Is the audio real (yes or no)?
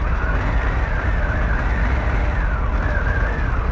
yes